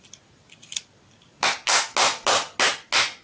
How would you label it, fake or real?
real